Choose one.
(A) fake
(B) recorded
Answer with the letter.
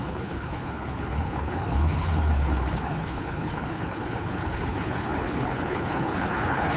A